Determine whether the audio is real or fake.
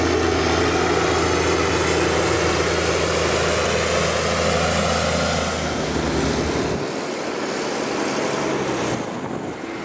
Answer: real